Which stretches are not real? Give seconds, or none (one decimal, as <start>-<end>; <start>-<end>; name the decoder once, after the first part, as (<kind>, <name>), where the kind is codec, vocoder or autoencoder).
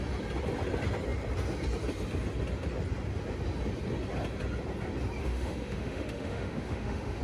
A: 5.2-7.2 (autoencoder, DAC-VAE)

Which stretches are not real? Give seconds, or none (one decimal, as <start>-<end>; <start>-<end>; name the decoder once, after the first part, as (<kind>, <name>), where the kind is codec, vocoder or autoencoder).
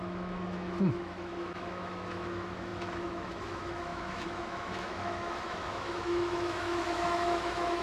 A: 0.0-7.8 (autoencoder, DAC-VAE)